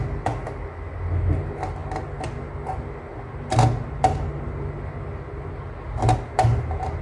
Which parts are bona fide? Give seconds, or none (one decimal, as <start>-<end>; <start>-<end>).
0.0-7.0